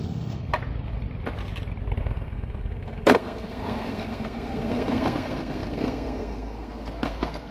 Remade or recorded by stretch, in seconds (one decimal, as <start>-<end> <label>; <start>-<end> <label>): 0.0-0.5 remade; 0.5-2.0 recorded; 2.0-7.5 remade